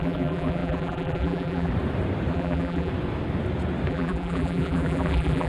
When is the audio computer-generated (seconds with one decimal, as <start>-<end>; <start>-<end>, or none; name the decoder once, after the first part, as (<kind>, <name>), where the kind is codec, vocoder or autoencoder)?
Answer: 0.0-1.7 (vocoder, BigVGAN v2); 2.3-2.9; 3.9-5.5